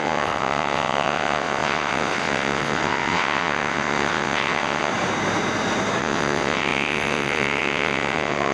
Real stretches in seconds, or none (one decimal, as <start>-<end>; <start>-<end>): 4.9-6.0